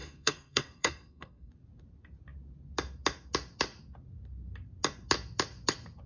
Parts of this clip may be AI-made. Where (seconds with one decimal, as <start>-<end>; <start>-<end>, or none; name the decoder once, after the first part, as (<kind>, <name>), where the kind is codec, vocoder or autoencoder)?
0.0-1.5 (codec, SNAC)